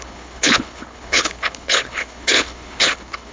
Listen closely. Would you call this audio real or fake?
fake